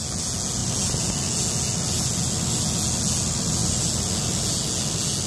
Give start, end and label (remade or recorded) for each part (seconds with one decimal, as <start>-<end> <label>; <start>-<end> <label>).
0.0-5.3 recorded